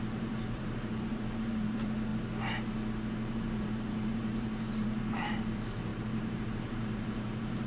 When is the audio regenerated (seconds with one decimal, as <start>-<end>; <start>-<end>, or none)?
0.0-2.1; 3.3-7.7